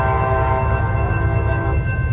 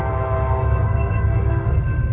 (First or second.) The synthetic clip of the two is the second